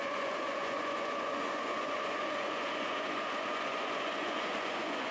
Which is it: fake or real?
fake